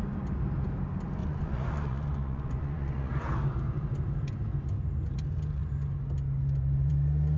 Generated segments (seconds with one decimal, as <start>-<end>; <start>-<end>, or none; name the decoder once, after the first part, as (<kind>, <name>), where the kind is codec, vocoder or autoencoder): 1.2-3.1 (vocoder, Vocos)